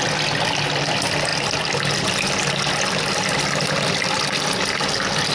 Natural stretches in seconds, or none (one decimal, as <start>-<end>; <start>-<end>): 0.0-5.3